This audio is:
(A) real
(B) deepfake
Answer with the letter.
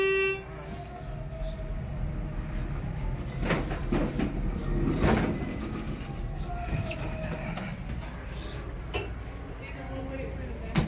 A